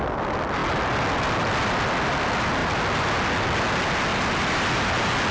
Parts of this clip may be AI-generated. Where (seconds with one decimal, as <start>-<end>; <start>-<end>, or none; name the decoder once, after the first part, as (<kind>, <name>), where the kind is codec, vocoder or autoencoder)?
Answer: none